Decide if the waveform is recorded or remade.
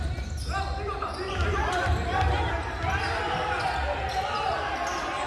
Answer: recorded